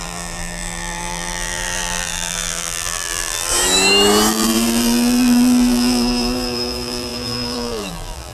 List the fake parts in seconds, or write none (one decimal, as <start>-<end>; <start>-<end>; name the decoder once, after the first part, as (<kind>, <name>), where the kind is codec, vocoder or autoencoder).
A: 0.0-3.5 (vocoder, BigVGAN v2); 4.3-8.3